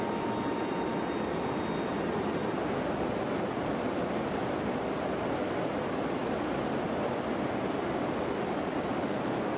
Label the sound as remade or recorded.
recorded